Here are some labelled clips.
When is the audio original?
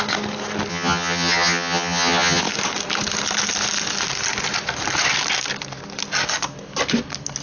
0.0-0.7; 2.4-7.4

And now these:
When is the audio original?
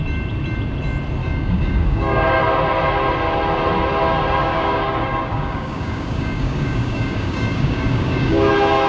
0.0-1.2; 2.4-4.4; 8.5-8.9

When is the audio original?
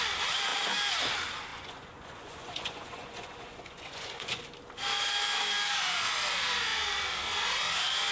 0.0-1.5; 4.4-8.1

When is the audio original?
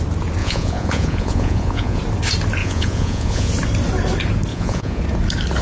0.0-0.4; 2.0-2.6; 3.5-4.5; 5.0-5.6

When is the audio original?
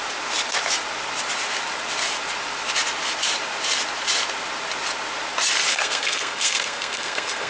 0.0-5.7